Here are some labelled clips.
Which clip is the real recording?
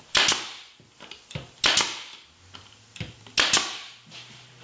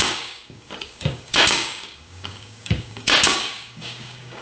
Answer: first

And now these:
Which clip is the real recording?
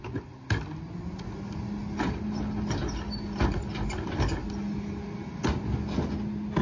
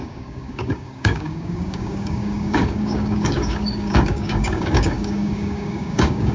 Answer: first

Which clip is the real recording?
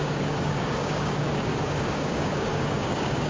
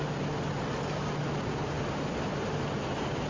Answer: second